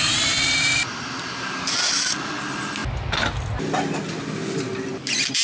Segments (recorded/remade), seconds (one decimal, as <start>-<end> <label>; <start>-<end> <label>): 0.0-2.3 remade; 2.3-5.4 recorded